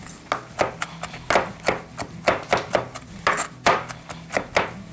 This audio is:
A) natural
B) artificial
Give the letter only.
A